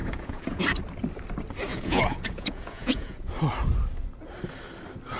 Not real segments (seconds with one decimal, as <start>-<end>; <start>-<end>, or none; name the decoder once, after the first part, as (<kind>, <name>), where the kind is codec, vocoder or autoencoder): 0.0-0.6 (vocoder, Vocos); 1.7-3.3